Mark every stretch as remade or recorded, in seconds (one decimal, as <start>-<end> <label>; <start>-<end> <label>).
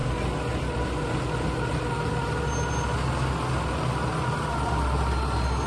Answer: 0.0-5.7 recorded